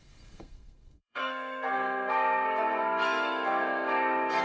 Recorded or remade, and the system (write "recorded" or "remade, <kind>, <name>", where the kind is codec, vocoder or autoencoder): remade, codec, SNAC